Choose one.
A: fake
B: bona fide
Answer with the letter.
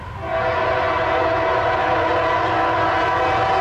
B